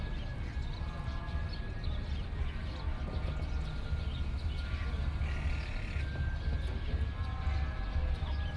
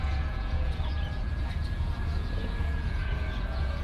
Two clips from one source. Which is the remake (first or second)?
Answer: second